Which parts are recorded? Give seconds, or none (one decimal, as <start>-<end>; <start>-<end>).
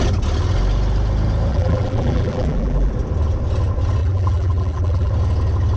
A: 0.0-1.5; 2.9-4.0; 5.1-5.8